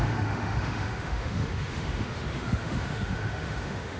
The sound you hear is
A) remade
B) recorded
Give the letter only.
A